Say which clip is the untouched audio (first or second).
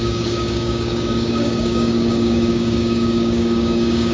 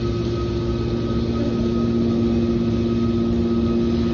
second